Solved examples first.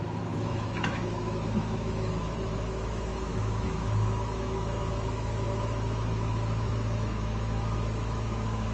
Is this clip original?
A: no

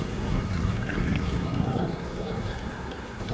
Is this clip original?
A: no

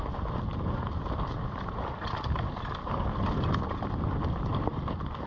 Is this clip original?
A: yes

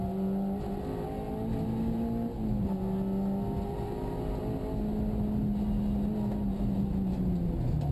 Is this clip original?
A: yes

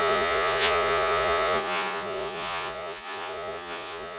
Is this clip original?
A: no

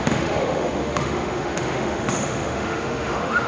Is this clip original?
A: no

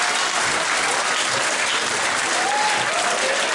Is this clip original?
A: yes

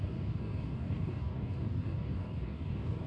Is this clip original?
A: no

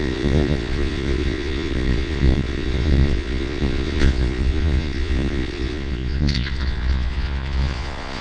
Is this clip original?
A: no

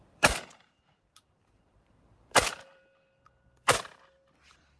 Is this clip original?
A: no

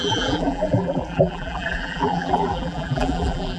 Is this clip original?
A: no